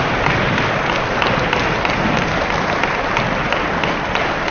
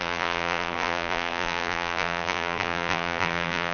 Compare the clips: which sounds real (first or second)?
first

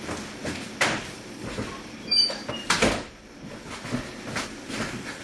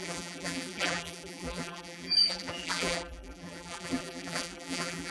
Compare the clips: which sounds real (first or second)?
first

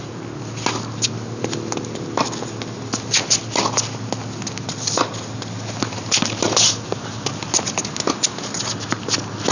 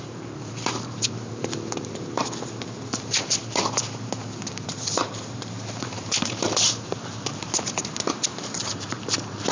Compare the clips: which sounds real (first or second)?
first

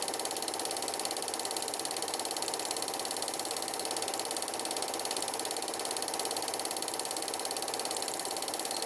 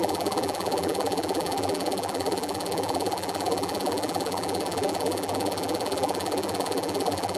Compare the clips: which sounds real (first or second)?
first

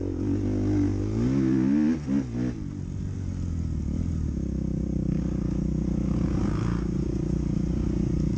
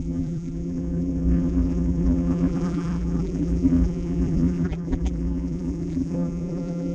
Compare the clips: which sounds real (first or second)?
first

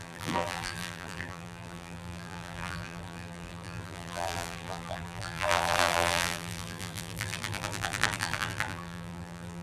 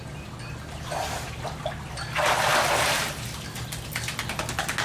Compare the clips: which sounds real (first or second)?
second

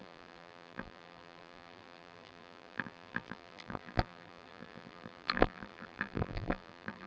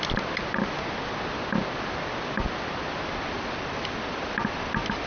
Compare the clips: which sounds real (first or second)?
second